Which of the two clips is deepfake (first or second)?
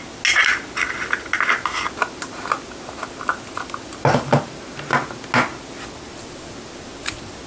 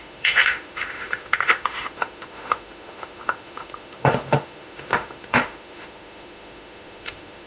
second